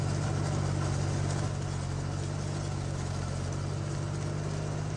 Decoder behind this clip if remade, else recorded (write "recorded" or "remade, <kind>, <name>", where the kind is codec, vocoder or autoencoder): recorded